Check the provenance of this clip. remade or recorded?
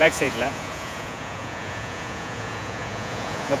remade